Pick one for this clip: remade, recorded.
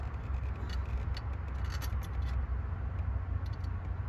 recorded